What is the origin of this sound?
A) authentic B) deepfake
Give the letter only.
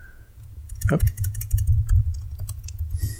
B